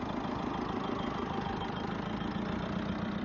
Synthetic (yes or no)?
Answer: no